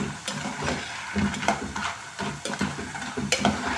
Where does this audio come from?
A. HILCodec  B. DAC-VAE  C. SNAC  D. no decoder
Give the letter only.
D